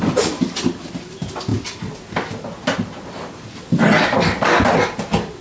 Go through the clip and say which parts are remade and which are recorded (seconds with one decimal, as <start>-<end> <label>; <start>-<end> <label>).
0.0-5.4 recorded